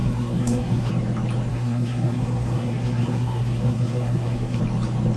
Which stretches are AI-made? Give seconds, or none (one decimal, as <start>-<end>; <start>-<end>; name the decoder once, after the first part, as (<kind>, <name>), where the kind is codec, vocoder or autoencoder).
0.0-0.9 (codec, SNAC); 1.5-4.6